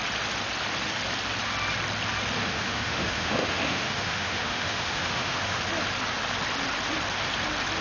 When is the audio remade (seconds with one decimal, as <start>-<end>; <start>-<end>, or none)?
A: 2.4-5.6